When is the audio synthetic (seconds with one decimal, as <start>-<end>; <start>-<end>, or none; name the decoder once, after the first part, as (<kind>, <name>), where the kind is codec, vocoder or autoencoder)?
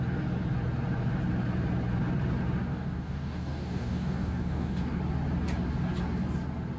2.7-5.0 (codec, DAC)